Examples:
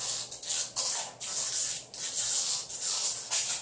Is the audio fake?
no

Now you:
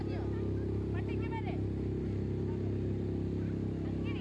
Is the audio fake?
no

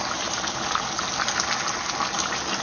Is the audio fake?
no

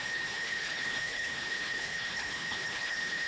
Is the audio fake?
yes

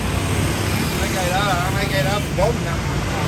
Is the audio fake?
no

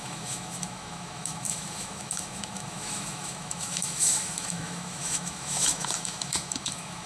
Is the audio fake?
yes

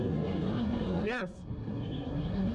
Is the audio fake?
yes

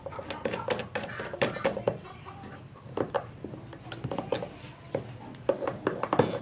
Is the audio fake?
no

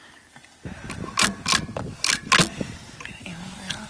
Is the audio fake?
no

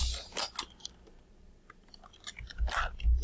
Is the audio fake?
no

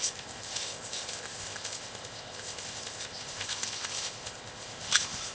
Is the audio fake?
yes